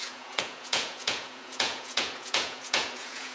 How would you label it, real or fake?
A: fake